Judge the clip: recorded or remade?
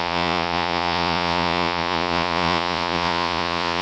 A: remade